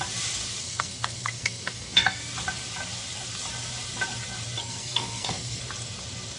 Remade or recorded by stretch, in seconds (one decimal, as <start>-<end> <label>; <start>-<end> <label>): 0.0-0.6 recorded; 0.6-2.2 remade; 2.2-4.6 recorded; 4.6-5.6 remade; 5.6-6.4 recorded